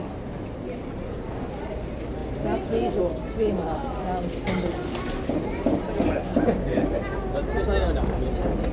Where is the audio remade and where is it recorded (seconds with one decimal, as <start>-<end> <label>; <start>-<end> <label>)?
0.0-8.7 recorded